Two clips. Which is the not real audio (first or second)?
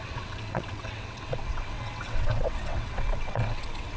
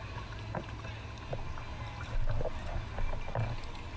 first